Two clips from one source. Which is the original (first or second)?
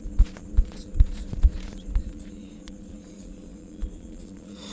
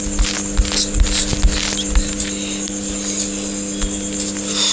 second